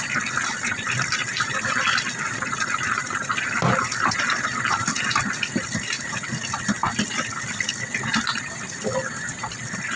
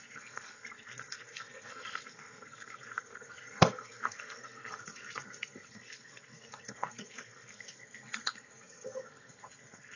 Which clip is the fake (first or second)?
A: second